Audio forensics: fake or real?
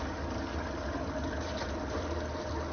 real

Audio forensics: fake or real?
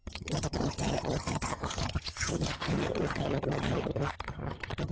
fake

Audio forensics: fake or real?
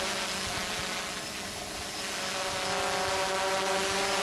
real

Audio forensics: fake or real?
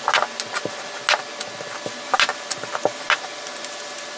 real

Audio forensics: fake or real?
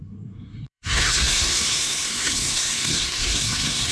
fake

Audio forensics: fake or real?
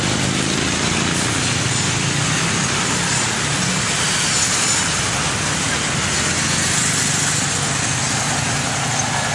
real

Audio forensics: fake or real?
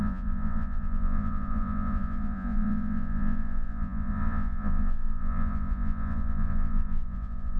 fake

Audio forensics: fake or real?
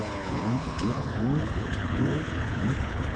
fake